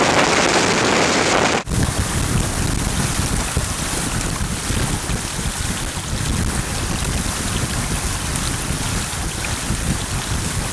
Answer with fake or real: real